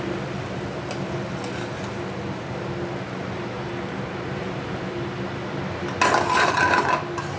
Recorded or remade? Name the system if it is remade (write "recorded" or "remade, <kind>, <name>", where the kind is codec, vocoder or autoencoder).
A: recorded